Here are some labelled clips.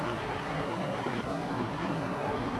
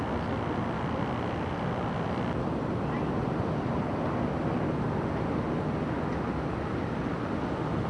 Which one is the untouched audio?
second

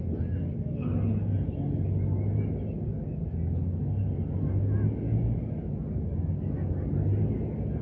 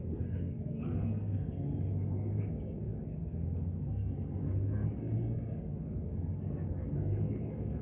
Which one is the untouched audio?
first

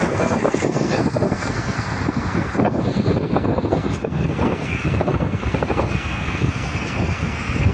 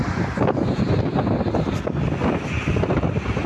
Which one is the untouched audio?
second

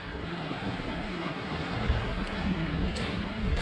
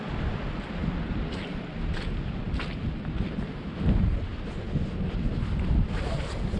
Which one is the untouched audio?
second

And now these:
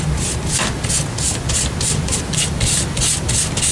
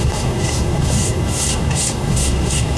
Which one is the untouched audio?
first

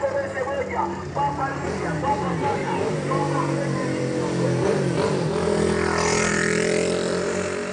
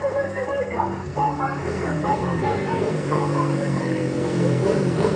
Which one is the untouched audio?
first